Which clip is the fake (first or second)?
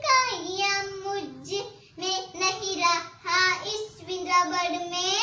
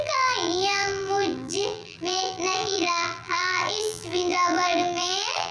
second